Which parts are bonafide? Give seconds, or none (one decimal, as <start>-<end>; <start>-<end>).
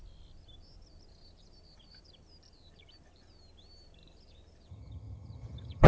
0.0-4.7